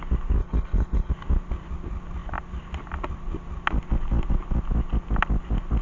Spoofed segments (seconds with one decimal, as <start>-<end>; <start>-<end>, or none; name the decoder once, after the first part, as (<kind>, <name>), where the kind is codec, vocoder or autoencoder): 0.4-1.1 (codec, HILCodec)